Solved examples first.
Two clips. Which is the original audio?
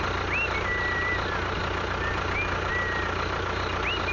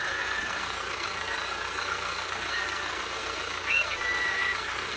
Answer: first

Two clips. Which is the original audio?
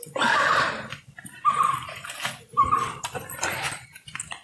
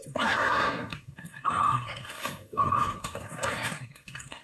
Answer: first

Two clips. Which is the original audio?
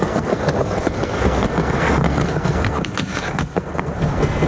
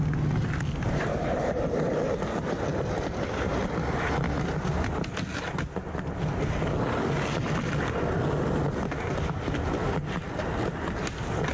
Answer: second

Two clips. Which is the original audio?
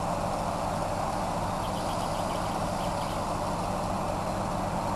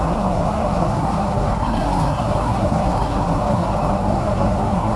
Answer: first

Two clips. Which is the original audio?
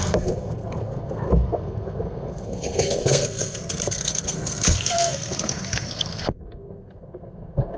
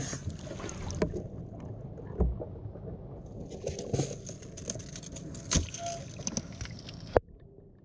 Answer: second